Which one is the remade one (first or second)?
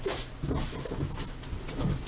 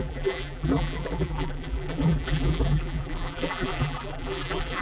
second